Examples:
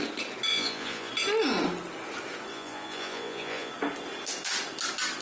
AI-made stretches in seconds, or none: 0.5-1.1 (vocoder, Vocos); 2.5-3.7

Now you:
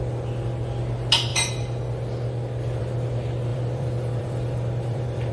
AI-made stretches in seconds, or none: 3.5-5.3 (vocoder, BigVGAN v2)

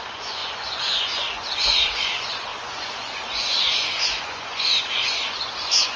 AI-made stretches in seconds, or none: 0.0-6.0 (vocoder, Vocos)

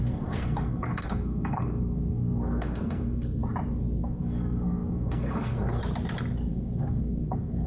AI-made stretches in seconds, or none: 0.0-3.4 (codec, SNAC); 4.0-5.8; 6.5-7.7

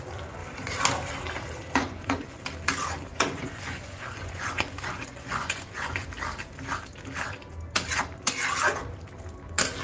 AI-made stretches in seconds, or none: 1.8-2.4 (vocoder, Vocos); 3.1-6.1